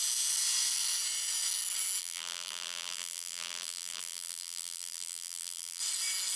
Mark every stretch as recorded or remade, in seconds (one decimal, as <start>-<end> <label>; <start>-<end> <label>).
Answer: 0.0-2.0 recorded; 2.0-5.8 remade; 5.8-6.4 recorded